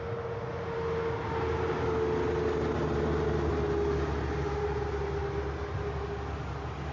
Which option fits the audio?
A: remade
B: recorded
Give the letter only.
B